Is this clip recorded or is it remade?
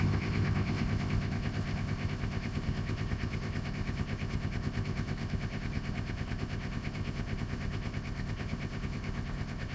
remade